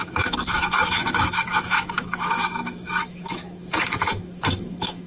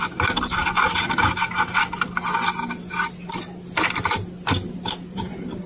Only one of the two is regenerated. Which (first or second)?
first